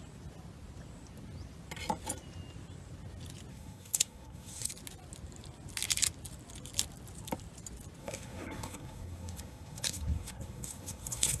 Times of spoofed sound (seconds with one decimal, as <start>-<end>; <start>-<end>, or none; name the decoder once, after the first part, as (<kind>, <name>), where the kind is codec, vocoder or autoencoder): 3.5-4.7 (codec, SNAC); 8.0-11.4